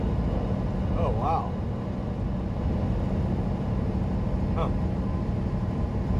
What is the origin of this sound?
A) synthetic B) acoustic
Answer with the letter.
B